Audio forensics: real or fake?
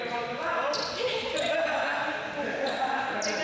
real